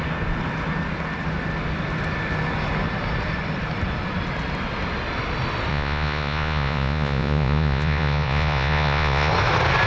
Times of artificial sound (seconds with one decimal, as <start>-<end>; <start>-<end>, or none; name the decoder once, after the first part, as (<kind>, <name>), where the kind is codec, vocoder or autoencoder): 5.7-9.3 (vocoder, Vocos)